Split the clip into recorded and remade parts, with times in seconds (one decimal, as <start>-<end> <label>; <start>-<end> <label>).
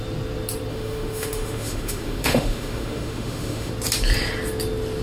0.0-0.7 recorded; 0.7-3.7 remade; 3.7-5.0 recorded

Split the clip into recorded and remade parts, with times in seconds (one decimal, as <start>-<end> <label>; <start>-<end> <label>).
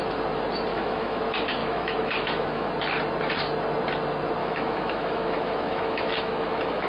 0.0-0.7 recorded; 0.7-1.2 remade; 1.2-1.6 recorded; 1.6-2.7 remade; 2.7-4.4 recorded; 4.4-6.9 remade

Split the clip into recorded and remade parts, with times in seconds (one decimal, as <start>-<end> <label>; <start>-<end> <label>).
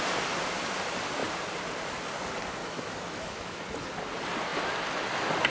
0.0-2.6 recorded; 2.6-3.6 remade; 3.6-5.5 recorded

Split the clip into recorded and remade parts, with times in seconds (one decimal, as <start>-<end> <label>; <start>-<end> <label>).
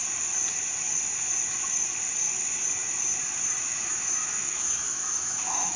0.0-3.5 recorded; 3.5-5.8 remade